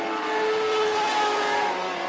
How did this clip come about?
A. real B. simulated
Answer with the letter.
A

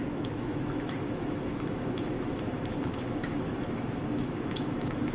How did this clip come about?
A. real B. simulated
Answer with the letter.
B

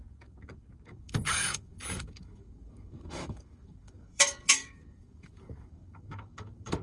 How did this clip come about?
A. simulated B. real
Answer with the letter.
A